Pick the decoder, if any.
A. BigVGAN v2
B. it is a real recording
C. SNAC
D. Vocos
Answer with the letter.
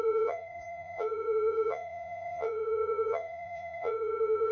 D